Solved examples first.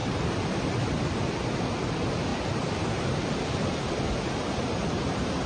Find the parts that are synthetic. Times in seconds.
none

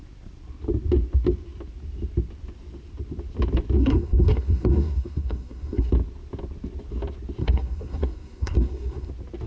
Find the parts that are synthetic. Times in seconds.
3.8-5.9; 7.4-9.1